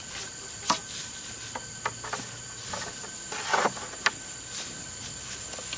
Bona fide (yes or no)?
yes